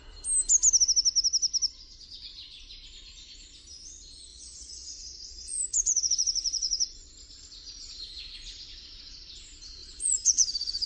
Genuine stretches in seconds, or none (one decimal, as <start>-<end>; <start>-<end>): 0.0-4.3; 7.1-9.8